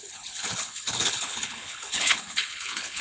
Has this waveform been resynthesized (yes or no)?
yes